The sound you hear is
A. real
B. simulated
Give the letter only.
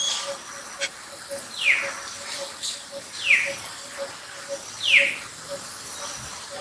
A